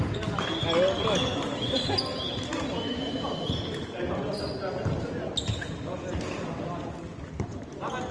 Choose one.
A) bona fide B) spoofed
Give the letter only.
A